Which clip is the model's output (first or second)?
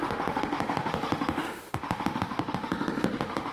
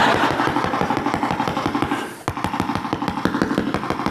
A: first